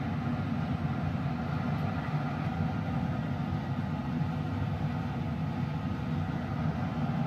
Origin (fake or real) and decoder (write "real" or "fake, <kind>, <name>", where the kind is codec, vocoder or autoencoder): real